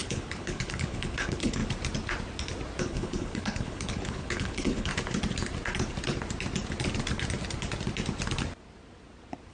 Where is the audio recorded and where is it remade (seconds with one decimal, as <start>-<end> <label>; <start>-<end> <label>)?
0.0-1.6 remade; 1.6-2.8 recorded; 2.8-4.9 remade; 4.9-9.5 recorded